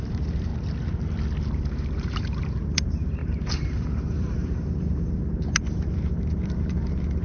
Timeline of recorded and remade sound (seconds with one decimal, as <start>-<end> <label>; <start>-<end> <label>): 0.0-0.5 remade; 0.5-1.4 recorded; 1.4-7.2 remade